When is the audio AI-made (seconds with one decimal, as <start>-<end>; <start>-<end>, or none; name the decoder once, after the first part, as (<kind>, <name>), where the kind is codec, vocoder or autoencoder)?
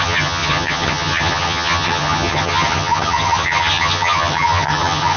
0.0-5.2 (vocoder, HiFi-GAN)